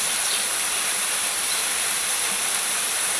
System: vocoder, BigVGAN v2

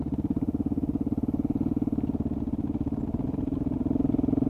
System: none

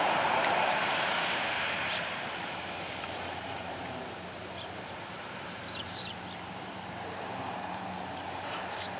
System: vocoder, BigVGAN v2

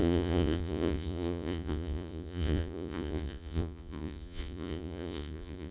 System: vocoder, Vocos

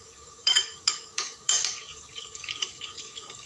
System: codec, DAC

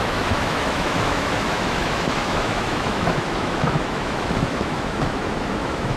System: autoencoder, DAC-VAE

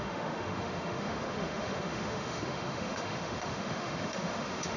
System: autoencoder, DAC-VAE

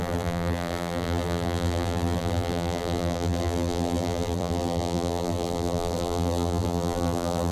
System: vocoder, BigVGAN v2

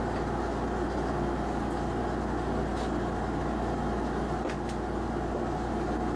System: none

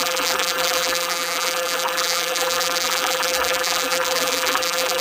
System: vocoder, BigVGAN v2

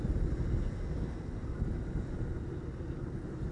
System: none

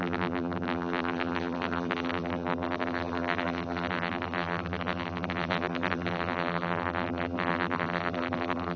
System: vocoder, BigVGAN v2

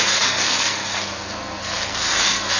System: codec, SNAC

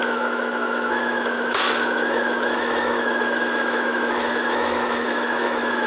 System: autoencoder, DAC-VAE